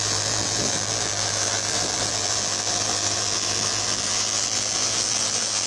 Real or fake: fake